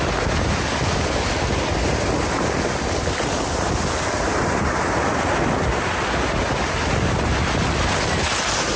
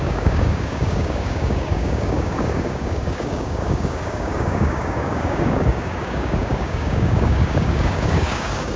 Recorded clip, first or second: first